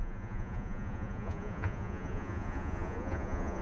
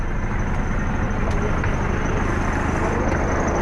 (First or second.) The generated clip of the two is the first